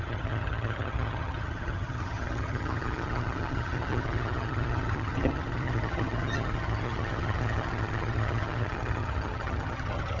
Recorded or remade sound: remade